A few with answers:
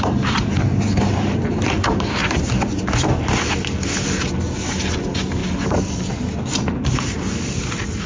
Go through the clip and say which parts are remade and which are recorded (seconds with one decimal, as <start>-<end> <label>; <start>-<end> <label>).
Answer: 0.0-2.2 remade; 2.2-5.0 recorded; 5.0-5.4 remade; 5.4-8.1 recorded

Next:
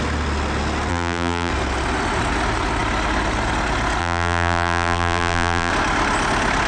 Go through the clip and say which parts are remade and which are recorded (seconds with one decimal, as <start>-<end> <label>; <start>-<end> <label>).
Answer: 0.0-0.9 recorded; 0.9-1.5 remade; 1.5-4.0 recorded; 4.0-5.7 remade; 5.7-6.7 recorded

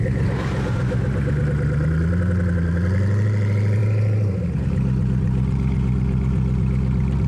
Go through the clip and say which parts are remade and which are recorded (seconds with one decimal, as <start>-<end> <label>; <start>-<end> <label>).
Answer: 0.0-3.8 recorded; 3.8-4.4 remade; 4.4-7.3 recorded

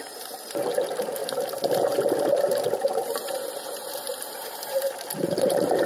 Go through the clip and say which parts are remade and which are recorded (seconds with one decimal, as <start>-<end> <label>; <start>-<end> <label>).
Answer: 0.0-1.2 remade; 1.2-2.4 recorded; 2.4-5.9 remade